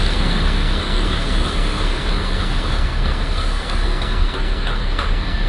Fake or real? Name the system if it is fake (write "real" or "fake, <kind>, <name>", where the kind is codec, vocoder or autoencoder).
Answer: fake, codec, SNAC